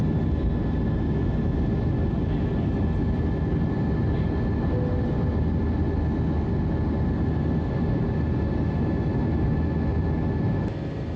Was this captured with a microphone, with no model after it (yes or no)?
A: yes